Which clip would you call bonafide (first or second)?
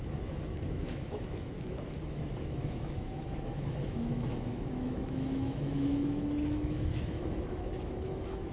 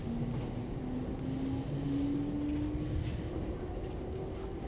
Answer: second